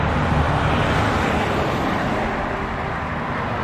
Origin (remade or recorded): recorded